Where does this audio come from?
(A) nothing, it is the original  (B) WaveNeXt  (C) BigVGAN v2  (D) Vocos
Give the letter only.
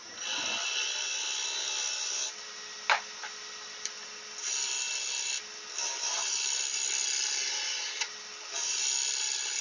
A